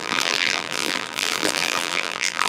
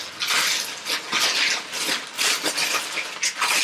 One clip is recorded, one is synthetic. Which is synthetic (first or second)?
first